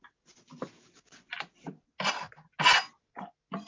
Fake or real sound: real